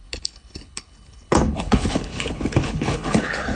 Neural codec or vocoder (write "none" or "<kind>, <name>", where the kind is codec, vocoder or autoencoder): codec, HILCodec